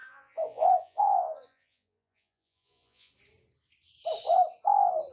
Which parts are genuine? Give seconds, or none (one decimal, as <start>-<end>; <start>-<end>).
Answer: 3.1-5.1